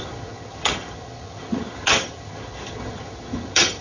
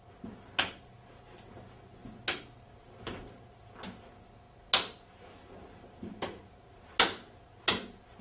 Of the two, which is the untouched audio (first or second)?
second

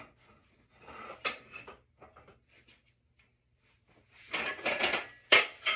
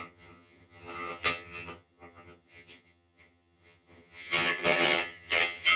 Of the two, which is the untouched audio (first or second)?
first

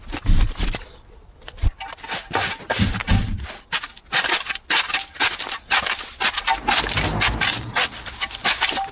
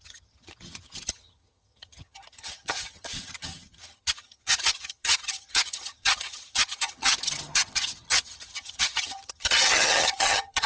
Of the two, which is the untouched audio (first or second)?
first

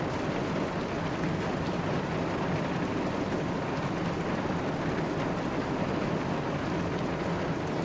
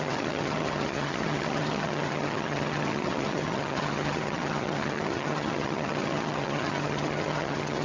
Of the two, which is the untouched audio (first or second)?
first